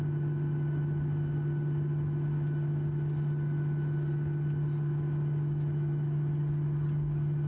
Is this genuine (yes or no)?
yes